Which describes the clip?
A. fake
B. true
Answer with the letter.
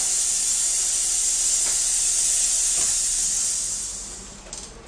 B